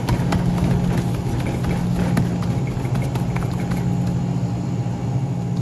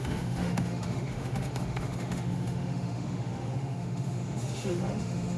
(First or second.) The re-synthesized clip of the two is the second